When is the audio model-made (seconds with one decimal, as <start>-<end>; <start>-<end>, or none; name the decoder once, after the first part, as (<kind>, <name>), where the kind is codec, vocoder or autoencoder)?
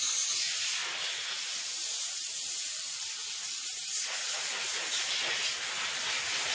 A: 0.0-0.8 (vocoder, BigVGAN v2); 1.5-6.5